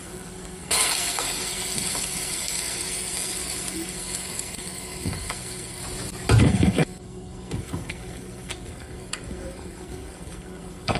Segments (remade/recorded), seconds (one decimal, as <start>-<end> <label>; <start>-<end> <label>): 0.0-5.8 remade; 5.8-6.4 recorded; 6.4-11.0 remade